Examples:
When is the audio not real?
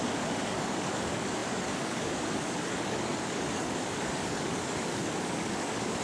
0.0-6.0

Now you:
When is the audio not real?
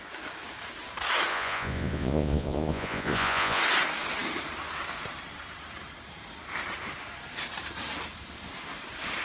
1.3-3.6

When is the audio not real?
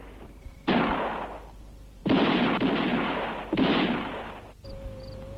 none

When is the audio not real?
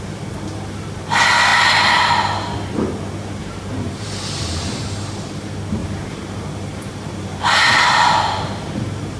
3.4-4.8; 5.8-9.2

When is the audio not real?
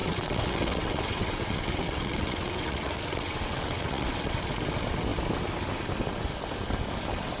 0.0-4.4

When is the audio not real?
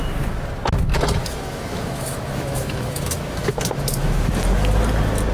1.2-4.3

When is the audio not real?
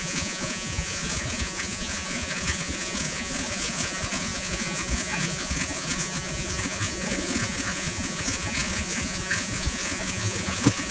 0.0-10.9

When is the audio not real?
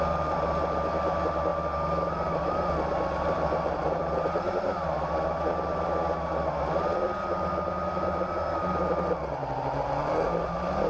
none